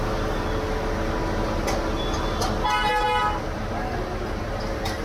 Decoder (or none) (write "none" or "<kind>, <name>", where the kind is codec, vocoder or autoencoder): none